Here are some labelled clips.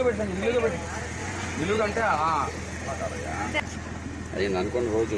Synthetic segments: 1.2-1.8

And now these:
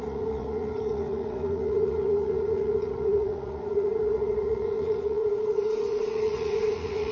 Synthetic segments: 0.0-7.1

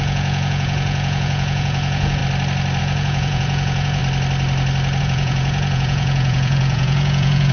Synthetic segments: 0.0-2.2; 2.8-4.0; 5.0-7.5

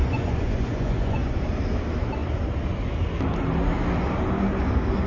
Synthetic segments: 0.0-1.4

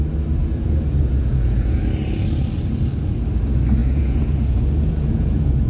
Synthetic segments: 0.4-1.8; 3.8-5.7

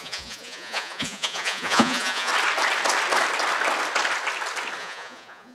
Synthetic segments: 0.0-2.3; 4.8-5.5

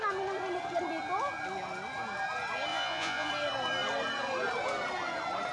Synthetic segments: 2.7-3.3

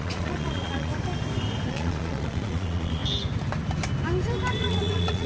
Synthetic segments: 0.0-0.9; 1.7-3.0; 4.6-5.3